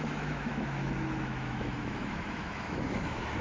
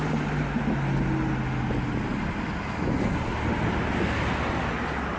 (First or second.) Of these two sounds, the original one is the second